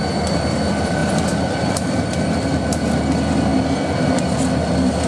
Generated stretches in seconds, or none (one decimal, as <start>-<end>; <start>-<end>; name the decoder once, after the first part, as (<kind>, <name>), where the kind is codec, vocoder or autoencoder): none